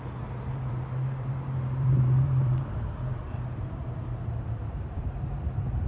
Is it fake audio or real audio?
fake